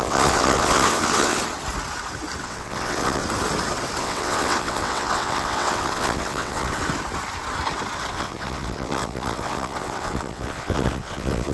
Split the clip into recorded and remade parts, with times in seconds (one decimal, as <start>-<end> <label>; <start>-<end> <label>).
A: 0.0-1.4 remade; 1.4-2.4 recorded; 2.4-3.2 remade; 3.2-4.0 recorded; 4.0-6.8 remade; 6.8-8.1 recorded; 8.1-11.5 remade